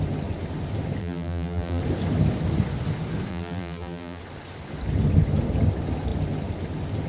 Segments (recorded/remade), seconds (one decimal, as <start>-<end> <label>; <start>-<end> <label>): 0.0-1.0 recorded; 1.0-1.8 remade; 1.8-3.3 recorded; 3.3-4.2 remade; 4.2-7.1 recorded